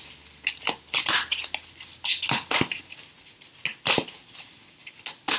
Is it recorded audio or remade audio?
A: recorded